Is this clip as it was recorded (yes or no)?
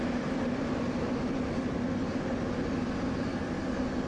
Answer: yes